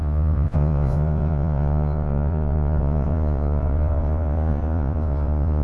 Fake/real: fake